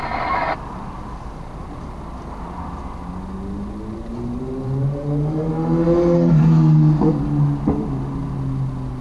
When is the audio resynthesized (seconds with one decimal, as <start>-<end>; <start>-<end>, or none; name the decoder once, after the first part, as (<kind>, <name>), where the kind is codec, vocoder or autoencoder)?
4.1-5.5 (vocoder, BigVGAN v2)